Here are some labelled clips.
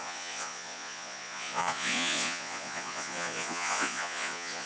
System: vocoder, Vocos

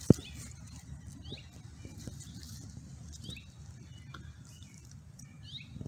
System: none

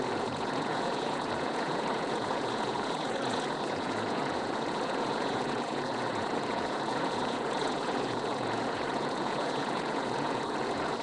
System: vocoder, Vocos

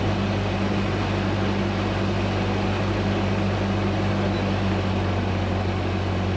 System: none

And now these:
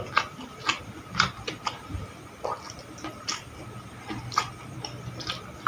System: none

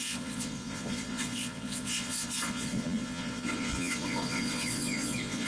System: vocoder, Vocos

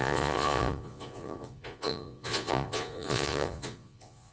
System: vocoder, Vocos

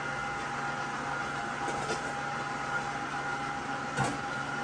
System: none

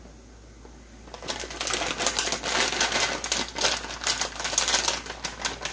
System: none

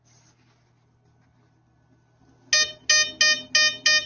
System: none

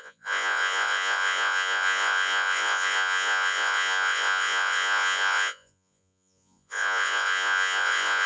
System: vocoder, Vocos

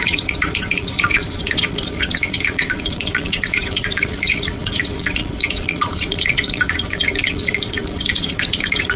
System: vocoder, Vocos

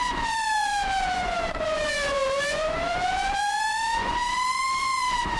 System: vocoder, Vocos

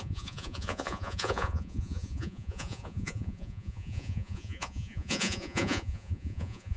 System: vocoder, Vocos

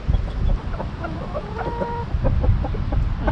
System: none